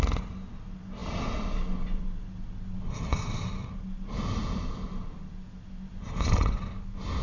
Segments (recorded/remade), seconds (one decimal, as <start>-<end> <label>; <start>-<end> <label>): 0.0-7.2 recorded